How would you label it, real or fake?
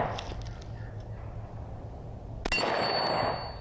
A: real